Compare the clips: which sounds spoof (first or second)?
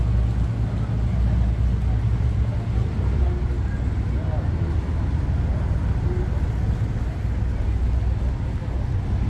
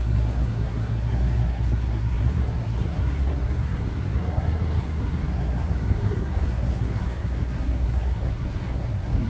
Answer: second